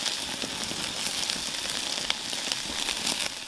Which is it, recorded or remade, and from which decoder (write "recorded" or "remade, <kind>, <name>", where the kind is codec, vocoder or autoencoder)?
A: recorded